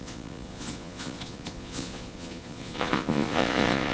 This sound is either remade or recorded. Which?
remade